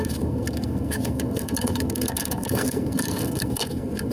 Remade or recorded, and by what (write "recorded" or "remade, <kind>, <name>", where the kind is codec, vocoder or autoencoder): remade, codec, SNAC